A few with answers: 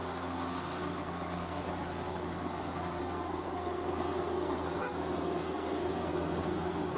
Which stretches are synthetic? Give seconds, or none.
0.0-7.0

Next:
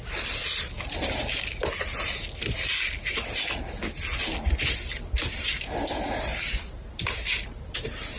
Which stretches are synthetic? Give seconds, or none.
none

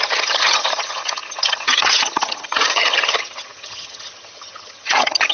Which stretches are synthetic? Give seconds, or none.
0.0-5.3

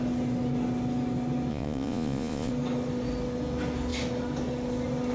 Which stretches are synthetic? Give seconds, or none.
1.5-2.5

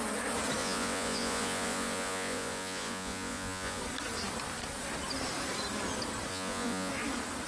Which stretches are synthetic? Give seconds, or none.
0.6-3.8; 6.3-6.9

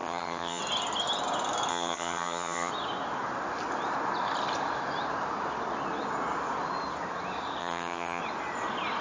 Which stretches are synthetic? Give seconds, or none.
0.0-0.6; 1.7-2.7; 7.6-8.2

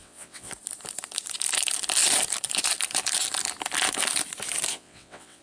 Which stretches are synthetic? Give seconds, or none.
0.0-0.5; 4.7-5.4